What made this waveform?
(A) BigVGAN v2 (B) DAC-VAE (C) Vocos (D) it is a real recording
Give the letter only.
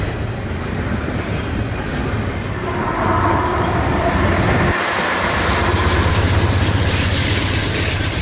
A